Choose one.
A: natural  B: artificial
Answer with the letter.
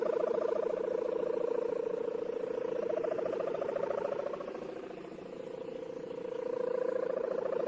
A